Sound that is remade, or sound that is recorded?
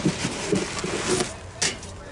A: recorded